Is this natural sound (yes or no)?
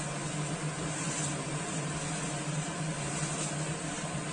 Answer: yes